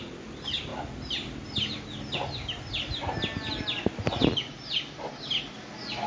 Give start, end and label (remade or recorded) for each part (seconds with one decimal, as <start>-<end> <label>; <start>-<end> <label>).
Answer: 0.0-6.1 recorded